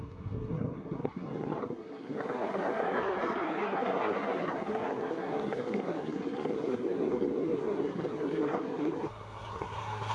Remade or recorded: remade